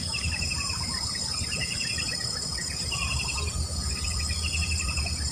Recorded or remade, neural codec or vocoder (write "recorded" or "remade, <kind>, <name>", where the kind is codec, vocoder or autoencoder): remade, vocoder, Vocos